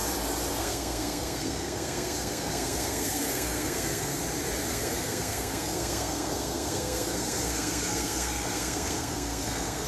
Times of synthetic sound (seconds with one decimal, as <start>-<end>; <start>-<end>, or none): 0.5-4.2; 4.7-9.9